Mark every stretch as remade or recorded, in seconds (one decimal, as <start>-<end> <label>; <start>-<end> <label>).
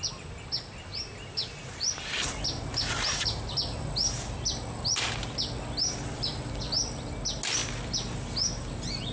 0.0-9.1 recorded